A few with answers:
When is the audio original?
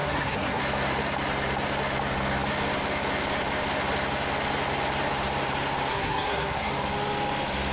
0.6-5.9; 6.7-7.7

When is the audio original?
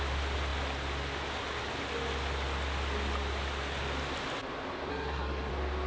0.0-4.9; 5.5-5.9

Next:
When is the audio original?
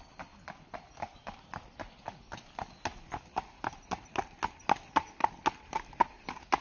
0.0-6.6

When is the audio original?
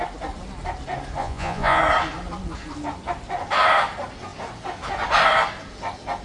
0.0-1.2; 1.8-6.2